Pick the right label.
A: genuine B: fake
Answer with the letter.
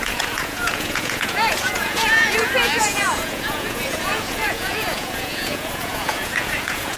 B